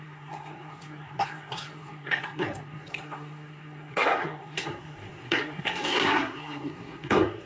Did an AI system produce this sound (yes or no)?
yes